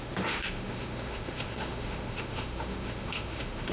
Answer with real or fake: fake